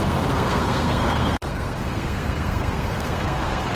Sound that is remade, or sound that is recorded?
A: remade